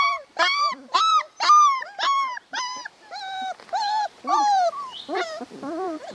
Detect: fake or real fake